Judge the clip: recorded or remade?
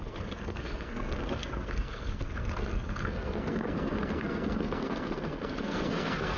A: remade